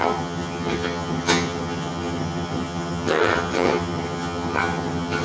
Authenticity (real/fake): fake